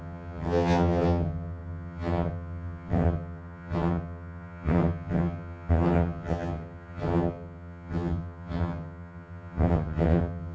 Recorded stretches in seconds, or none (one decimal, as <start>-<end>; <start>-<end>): none